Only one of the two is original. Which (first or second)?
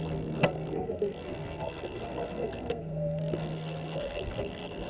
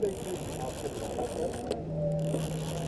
second